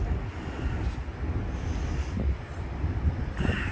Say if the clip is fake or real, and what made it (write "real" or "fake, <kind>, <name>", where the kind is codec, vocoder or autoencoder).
real